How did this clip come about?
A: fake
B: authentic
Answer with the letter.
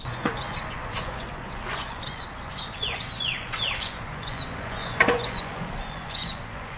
A